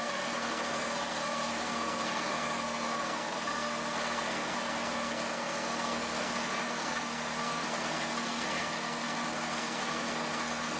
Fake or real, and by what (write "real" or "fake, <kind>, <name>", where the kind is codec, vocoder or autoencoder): fake, codec, SNAC